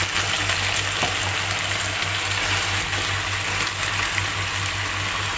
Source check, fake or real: real